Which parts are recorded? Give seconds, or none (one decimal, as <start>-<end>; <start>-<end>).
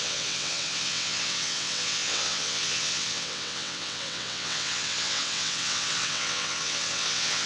none